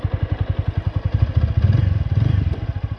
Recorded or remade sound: recorded